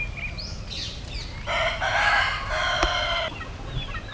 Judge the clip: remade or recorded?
recorded